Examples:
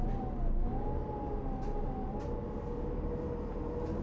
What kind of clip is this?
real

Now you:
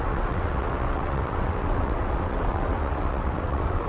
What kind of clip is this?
fake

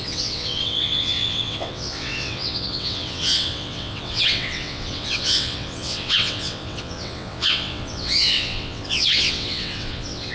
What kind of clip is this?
fake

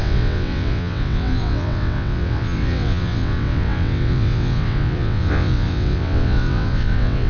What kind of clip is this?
fake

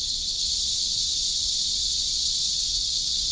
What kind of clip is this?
fake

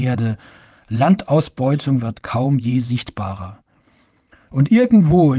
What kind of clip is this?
fake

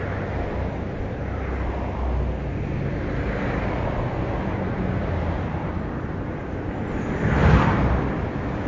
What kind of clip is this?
real